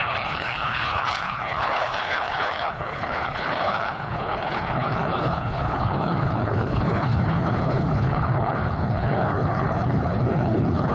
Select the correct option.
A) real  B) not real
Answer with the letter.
B